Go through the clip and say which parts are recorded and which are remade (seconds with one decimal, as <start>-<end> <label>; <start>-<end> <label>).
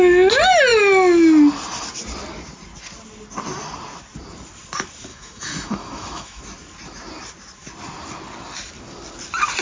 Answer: 0.0-5.1 recorded; 5.1-6.4 remade; 6.4-9.6 recorded